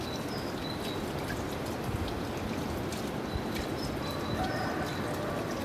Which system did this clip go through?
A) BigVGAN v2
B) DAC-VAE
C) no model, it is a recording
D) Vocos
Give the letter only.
C